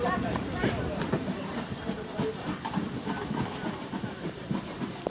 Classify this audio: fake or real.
fake